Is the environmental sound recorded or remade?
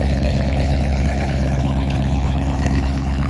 remade